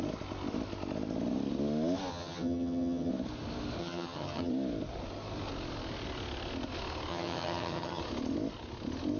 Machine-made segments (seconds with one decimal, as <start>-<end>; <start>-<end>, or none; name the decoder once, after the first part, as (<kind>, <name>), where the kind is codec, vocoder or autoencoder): 2.1-3.1 (vocoder, HiFi-GAN); 3.8-4.5; 7.1-8.0